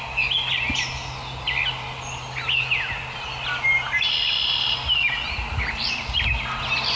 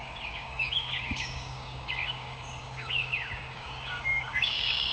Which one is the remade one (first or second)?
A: second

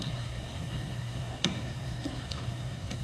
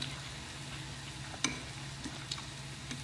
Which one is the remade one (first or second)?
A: first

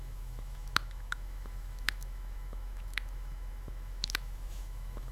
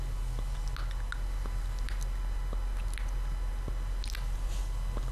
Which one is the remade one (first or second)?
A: first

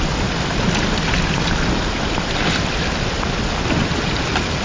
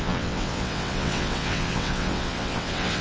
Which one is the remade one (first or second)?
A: second